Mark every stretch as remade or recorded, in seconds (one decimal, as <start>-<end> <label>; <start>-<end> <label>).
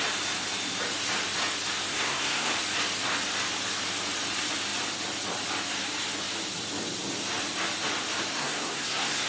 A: 0.0-1.9 recorded; 1.9-2.5 remade; 2.5-8.3 recorded; 8.3-9.3 remade